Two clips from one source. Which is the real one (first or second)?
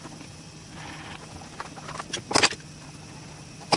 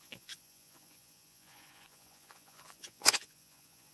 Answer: first